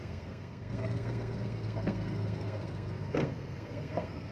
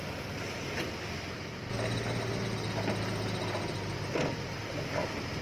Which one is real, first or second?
second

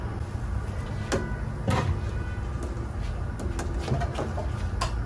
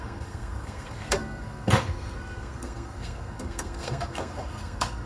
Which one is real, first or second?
first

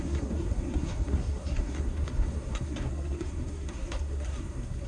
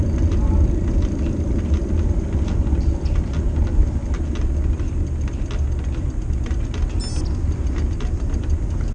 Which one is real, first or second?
second